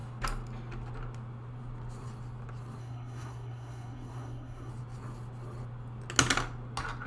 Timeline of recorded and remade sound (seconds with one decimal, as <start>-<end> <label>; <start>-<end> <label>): 0.0-2.8 recorded; 2.8-4.7 remade; 4.7-7.1 recorded